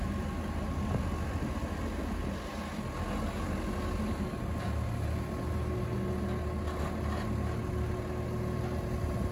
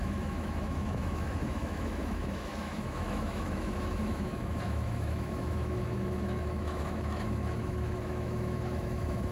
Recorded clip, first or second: first